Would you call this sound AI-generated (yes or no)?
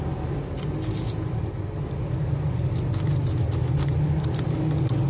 no